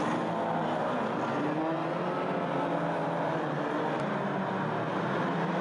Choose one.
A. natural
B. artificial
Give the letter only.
A